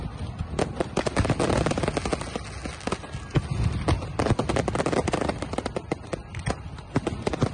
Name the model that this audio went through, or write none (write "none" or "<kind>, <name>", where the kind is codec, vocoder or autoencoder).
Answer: none